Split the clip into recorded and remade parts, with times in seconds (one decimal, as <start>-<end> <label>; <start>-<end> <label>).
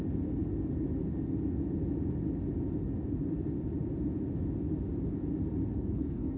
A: 0.0-5.7 recorded; 5.7-6.4 remade